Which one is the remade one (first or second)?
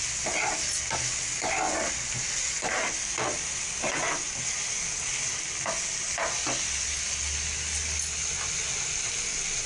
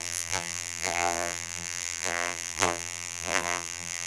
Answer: second